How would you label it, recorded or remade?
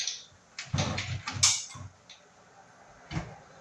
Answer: recorded